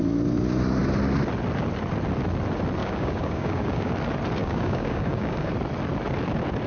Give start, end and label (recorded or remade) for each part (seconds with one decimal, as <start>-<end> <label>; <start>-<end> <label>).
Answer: 0.0-2.8 recorded; 2.8-3.9 remade; 3.9-4.4 recorded; 4.4-5.5 remade; 5.5-6.7 recorded